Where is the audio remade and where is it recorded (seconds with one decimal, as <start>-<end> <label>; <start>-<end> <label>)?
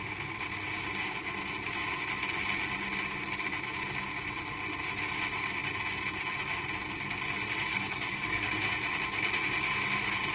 0.0-7.7 recorded; 7.7-8.5 remade; 8.5-10.3 recorded